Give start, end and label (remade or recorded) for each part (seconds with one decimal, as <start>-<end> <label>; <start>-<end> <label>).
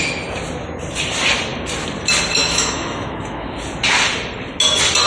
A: 0.0-2.4 recorded; 2.4-3.5 remade; 3.5-5.1 recorded